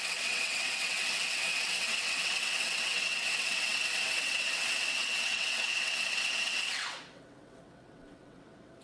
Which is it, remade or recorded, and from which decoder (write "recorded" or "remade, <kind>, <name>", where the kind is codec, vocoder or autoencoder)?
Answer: remade, vocoder, WaveNeXt